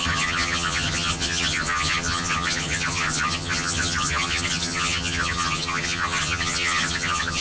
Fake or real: fake